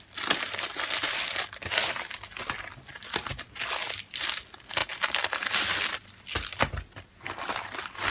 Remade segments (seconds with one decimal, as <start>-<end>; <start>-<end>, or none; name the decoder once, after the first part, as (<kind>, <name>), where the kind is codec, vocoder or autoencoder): none